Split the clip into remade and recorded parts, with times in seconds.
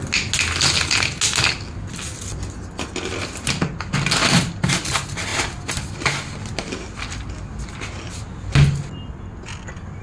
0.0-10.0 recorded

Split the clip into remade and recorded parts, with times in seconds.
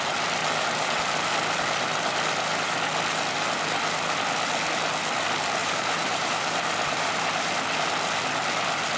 0.0-5.6 recorded; 5.6-7.5 remade; 7.5-9.0 recorded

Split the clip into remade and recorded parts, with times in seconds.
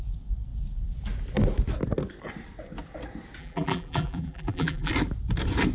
0.0-3.4 recorded; 3.4-4.9 remade; 4.9-5.7 recorded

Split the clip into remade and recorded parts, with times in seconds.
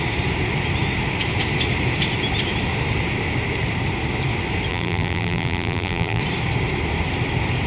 0.0-4.7 recorded; 4.7-6.2 remade; 6.2-7.7 recorded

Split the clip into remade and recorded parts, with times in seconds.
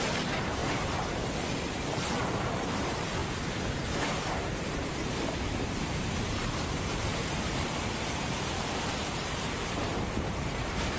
0.0-0.6 remade; 0.6-1.1 recorded; 1.1-3.2 remade; 3.2-6.4 recorded; 6.4-11.0 remade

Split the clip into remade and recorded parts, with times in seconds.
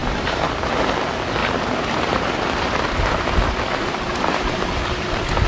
0.0-0.9 remade; 0.9-1.4 recorded; 1.4-4.7 remade; 4.7-5.5 recorded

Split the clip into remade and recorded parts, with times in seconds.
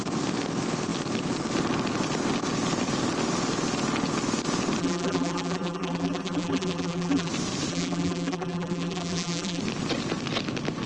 0.0-4.8 recorded; 4.8-7.3 remade; 7.3-7.7 recorded; 7.7-9.6 remade; 9.6-10.9 recorded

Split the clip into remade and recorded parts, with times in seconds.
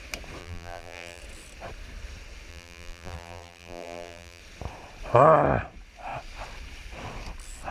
0.0-0.4 recorded; 0.4-1.2 remade; 1.2-2.5 recorded; 2.5-4.4 remade; 4.4-7.7 recorded